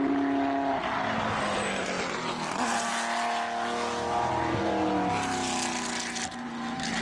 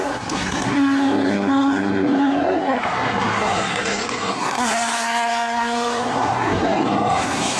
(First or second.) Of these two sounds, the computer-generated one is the second